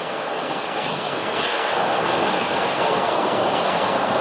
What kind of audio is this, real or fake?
fake